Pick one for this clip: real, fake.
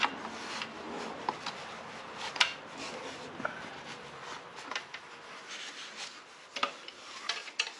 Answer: real